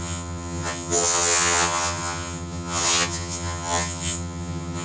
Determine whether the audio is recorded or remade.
remade